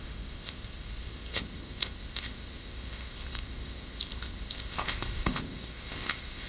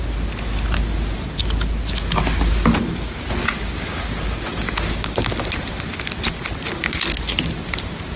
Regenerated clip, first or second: first